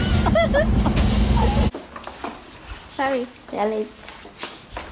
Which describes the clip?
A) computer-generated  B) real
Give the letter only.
B